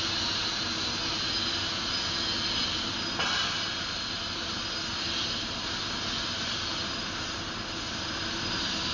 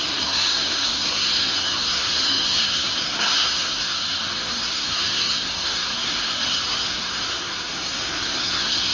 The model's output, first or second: second